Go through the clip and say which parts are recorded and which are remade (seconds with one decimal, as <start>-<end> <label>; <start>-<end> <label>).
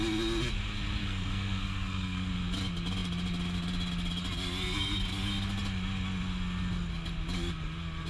0.0-1.0 recorded; 1.0-2.3 remade; 2.3-8.1 recorded